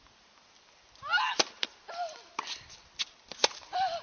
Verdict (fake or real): real